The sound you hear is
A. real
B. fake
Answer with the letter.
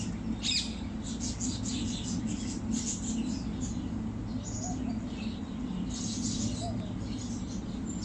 A